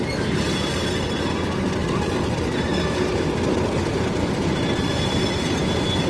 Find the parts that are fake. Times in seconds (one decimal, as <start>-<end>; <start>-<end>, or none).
none

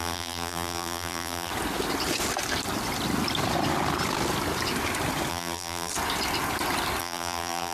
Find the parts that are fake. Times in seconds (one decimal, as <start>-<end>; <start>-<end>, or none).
0.0-1.5; 5.3-5.9; 7.0-7.7

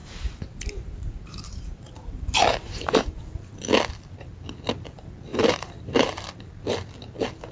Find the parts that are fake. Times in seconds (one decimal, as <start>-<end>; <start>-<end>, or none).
0.0-3.2; 5.3-6.3